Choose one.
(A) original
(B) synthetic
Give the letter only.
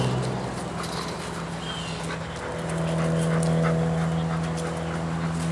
A